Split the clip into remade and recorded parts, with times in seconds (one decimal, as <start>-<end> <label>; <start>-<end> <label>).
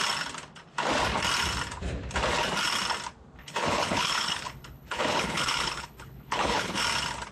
0.0-3.4 recorded; 3.4-6.8 remade; 6.8-7.3 recorded